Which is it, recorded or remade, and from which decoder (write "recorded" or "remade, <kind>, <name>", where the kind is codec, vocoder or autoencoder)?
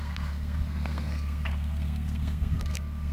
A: remade, codec, SNAC